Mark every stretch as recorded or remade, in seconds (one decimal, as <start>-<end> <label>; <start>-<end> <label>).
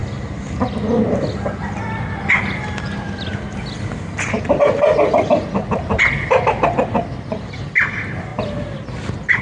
0.0-9.4 recorded